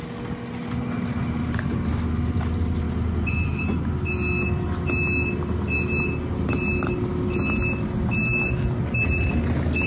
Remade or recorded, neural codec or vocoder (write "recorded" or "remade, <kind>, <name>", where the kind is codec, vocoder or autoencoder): recorded